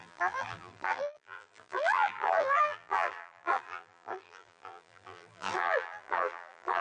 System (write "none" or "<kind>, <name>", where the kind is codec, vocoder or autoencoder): vocoder, BigVGAN v2